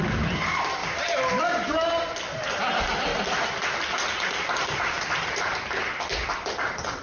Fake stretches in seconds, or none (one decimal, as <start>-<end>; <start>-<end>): 0.0-3.1; 4.3-7.0